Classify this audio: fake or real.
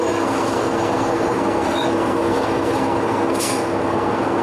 fake